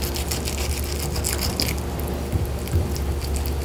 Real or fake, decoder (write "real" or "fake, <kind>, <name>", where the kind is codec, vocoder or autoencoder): real